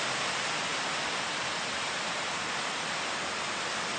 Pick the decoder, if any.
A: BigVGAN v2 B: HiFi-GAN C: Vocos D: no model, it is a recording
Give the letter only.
D